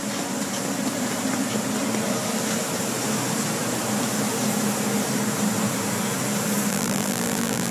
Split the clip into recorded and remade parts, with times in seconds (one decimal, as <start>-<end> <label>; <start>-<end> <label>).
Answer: 0.0-6.7 recorded; 6.7-7.7 remade